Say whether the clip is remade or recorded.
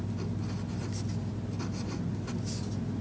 recorded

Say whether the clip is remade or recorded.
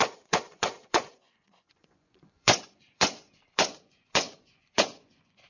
remade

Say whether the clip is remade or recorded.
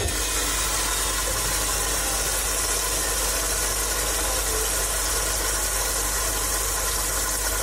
recorded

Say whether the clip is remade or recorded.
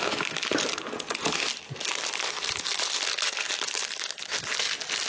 recorded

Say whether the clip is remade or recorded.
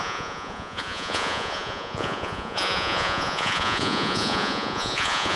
remade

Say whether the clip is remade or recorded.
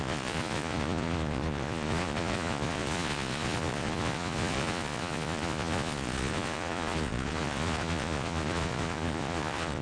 remade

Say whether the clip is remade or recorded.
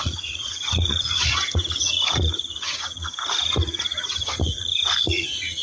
remade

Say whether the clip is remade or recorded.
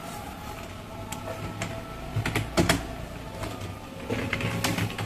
recorded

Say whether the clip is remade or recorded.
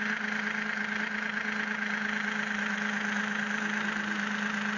recorded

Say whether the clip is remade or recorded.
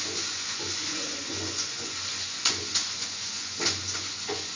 remade